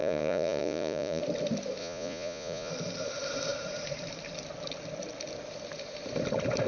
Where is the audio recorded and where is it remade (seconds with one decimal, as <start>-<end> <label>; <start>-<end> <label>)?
0.0-1.2 remade; 1.2-1.8 recorded; 1.8-2.7 remade; 2.7-6.7 recorded